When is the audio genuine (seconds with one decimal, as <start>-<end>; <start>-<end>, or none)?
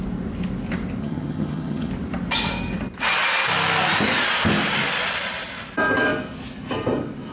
0.0-1.0; 1.9-7.3